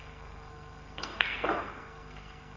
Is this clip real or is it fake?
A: fake